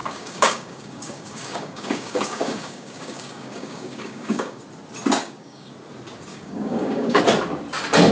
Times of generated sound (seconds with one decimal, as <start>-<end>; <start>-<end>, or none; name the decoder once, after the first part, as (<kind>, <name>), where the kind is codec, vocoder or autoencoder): 0.0-4.6 (codec, DAC); 5.2-5.7; 6.3-7.2